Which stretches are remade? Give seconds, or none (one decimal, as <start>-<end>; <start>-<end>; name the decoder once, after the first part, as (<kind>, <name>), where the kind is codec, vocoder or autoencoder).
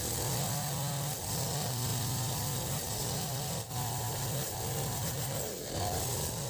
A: 1.9-5.8 (vocoder, BigVGAN v2)